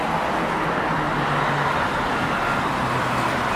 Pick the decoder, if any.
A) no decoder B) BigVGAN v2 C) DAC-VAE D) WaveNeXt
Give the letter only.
A